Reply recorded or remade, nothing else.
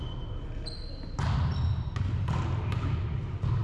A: recorded